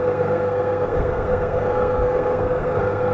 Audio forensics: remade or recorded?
remade